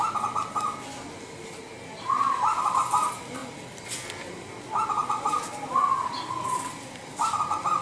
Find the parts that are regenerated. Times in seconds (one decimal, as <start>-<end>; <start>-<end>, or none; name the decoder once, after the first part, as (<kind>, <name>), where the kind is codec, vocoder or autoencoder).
none